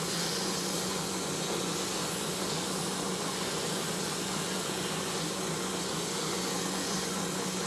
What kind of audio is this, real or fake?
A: fake